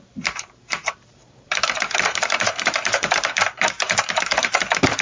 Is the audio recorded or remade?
remade